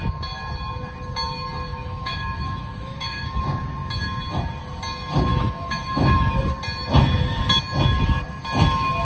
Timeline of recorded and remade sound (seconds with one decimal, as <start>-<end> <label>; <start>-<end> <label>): 0.0-1.7 recorded; 1.7-3.4 remade; 3.4-5.3 recorded; 5.3-6.4 remade; 6.4-9.0 recorded

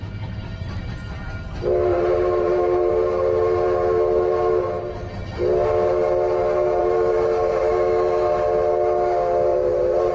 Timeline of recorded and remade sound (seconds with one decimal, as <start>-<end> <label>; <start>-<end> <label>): 0.0-1.9 recorded; 1.9-2.9 remade; 2.9-6.8 recorded; 6.8-7.6 remade; 7.6-9.5 recorded; 9.5-10.1 remade

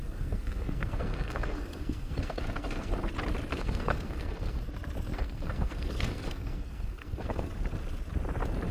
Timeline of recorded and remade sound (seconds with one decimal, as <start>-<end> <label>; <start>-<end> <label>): 0.0-3.1 remade; 3.1-3.5 recorded; 3.5-4.6 remade; 4.6-5.1 recorded; 5.1-7.5 remade; 7.5-8.7 recorded

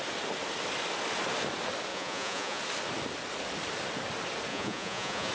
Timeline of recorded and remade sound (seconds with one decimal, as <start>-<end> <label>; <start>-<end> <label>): 0.0-1.9 recorded; 1.9-2.6 remade; 2.6-4.5 recorded; 4.5-5.3 remade

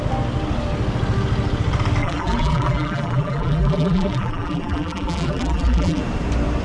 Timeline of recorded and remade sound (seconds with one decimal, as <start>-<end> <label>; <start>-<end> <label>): 0.0-2.0 recorded; 2.0-6.0 remade; 6.0-6.6 recorded

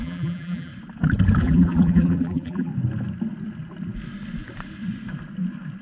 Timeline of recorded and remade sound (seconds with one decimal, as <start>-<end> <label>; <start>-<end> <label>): 0.0-0.7 remade; 0.7-1.4 recorded; 1.4-2.7 remade; 2.7-5.8 recorded